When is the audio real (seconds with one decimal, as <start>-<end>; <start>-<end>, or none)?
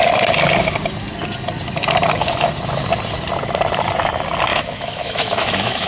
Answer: 0.0-4.5